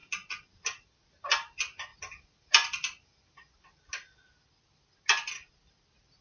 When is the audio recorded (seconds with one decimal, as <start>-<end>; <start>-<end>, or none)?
0.0-6.2